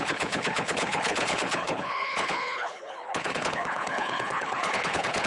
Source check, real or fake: fake